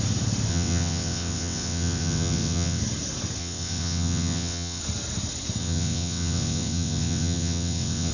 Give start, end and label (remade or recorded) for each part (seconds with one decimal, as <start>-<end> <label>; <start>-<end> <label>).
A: 0.0-0.5 recorded; 0.5-2.8 remade; 2.8-3.4 recorded; 3.4-4.8 remade; 4.8-5.6 recorded; 5.6-8.1 remade